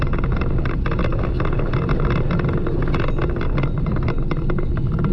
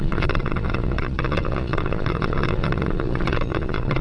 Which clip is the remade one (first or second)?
second